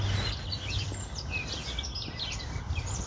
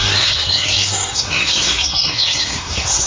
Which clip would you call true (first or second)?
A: first